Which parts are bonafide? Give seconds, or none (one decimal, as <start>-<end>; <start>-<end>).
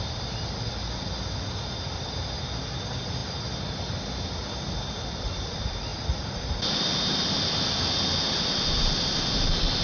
0.0-9.8